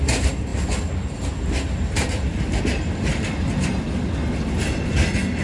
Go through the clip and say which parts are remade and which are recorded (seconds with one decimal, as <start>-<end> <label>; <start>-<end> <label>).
0.0-5.4 recorded